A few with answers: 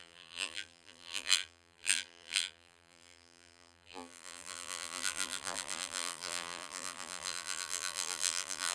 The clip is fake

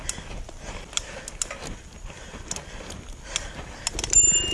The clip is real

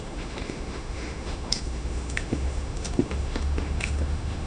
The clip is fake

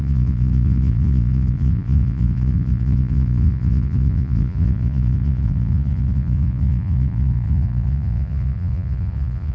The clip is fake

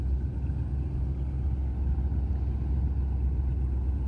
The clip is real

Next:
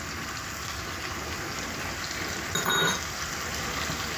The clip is real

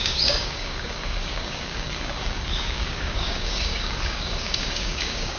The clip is fake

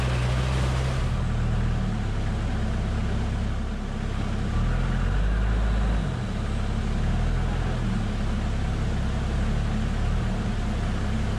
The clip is real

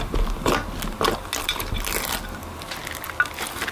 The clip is real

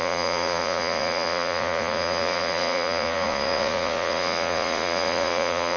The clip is fake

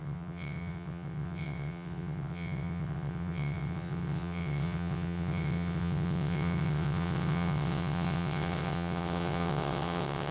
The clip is fake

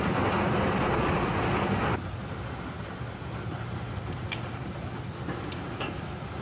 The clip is real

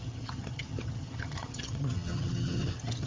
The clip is fake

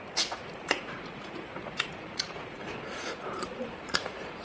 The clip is fake